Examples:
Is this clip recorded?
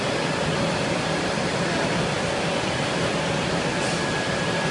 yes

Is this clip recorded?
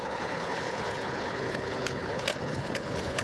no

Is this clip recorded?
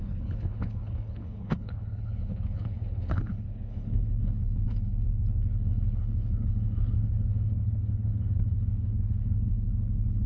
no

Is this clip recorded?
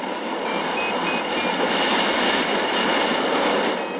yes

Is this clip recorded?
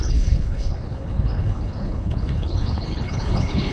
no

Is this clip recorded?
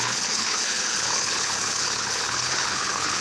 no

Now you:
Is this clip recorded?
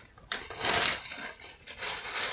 yes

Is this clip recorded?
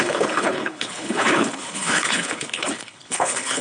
no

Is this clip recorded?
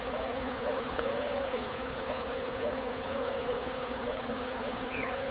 no